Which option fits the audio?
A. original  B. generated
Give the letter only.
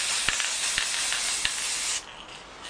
A